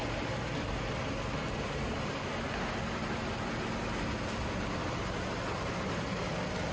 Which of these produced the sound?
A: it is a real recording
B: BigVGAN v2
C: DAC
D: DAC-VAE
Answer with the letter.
A